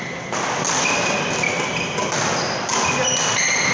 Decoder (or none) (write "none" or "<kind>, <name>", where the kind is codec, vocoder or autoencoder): none